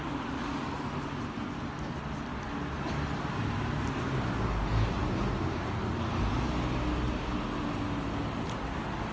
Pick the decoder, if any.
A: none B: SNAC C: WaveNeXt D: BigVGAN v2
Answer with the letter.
A